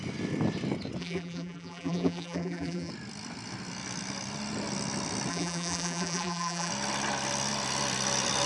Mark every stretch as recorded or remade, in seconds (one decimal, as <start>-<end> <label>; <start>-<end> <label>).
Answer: 0.0-1.0 recorded; 1.0-2.9 remade; 2.9-5.3 recorded; 5.3-6.7 remade; 6.7-8.5 recorded